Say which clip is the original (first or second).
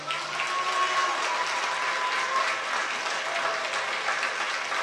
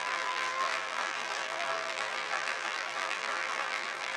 first